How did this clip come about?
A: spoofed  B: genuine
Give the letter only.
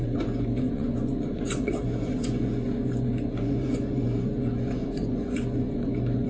A